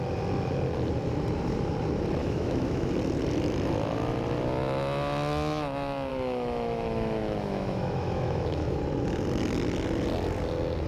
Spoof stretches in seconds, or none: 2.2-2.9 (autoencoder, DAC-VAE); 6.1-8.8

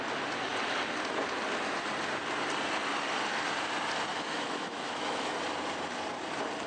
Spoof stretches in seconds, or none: 4.1-5.3 (autoencoder, DAC-VAE)

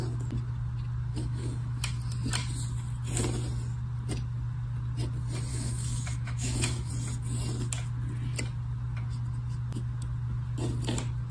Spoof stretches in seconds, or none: 1.1-1.9 (autoencoder, DAC-VAE); 5.5-6.9

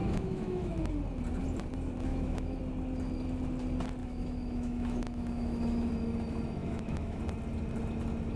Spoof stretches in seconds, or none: 0.0-0.9 (autoencoder, DAC-VAE); 2.1-2.6; 4.0-5.9; 6.6-7.2